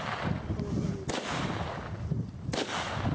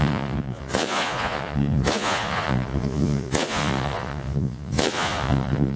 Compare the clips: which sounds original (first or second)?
first